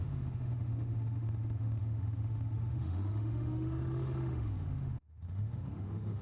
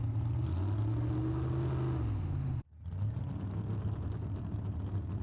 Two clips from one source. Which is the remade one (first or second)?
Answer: first